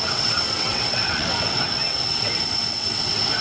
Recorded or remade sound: remade